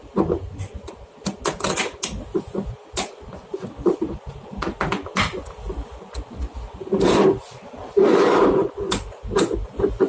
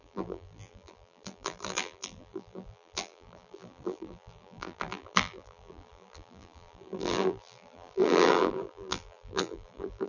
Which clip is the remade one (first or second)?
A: second